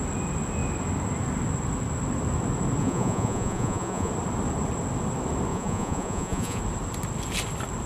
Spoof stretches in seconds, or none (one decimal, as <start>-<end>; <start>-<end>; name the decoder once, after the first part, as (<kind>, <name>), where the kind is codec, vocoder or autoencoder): 2.8-4.1 (vocoder, Vocos); 5.5-6.6